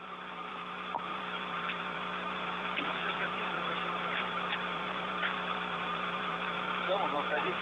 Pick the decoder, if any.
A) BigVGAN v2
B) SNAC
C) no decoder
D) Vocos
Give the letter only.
A